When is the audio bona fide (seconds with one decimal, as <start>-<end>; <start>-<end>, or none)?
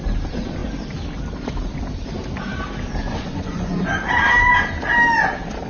0.0-3.0; 4.0-5.7